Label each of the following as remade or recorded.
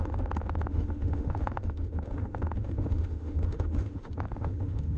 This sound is remade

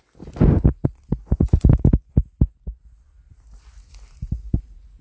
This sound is recorded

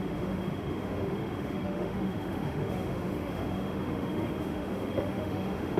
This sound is remade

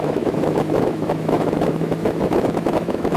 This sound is remade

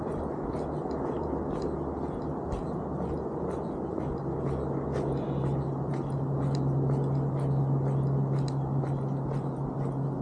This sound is recorded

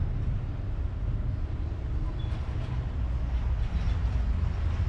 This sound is recorded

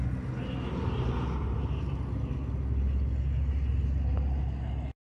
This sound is recorded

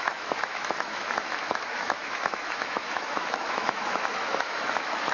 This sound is remade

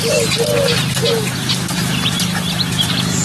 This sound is recorded